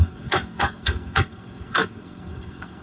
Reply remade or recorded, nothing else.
remade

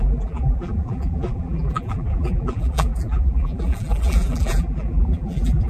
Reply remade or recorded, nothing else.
remade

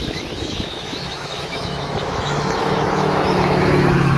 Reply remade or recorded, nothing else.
remade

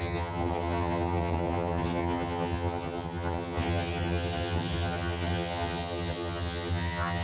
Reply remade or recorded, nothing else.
remade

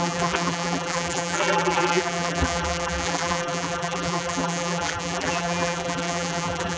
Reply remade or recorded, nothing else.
remade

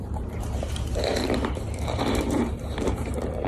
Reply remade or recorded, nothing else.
remade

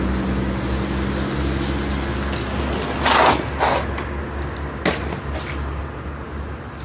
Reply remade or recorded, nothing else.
recorded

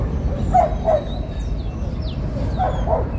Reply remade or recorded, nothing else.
recorded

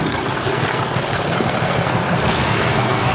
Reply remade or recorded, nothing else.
remade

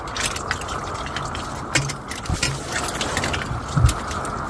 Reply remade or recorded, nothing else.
recorded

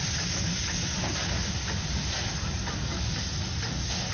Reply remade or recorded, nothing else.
recorded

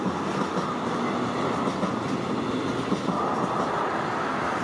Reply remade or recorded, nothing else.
recorded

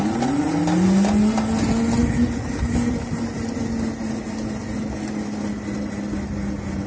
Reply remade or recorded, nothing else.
recorded